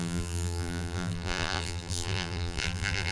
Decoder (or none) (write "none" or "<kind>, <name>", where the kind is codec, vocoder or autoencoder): vocoder, BigVGAN v2